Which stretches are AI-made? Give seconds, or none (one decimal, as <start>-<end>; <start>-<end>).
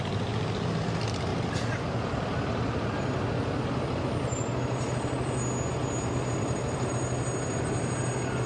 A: 1.3-3.7; 6.4-6.9